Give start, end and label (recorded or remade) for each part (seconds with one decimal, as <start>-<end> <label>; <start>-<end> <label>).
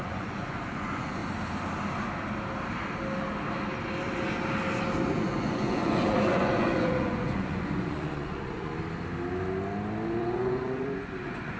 0.0-1.2 remade; 1.2-5.1 recorded; 5.1-8.7 remade; 8.7-10.2 recorded; 10.2-11.6 remade